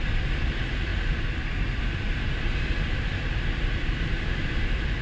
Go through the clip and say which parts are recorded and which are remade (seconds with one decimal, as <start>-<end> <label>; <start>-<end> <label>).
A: 0.0-5.0 recorded